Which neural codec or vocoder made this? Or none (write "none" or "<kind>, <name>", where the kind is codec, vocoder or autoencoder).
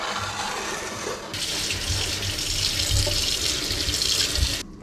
none